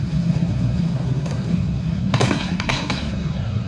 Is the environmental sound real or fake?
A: fake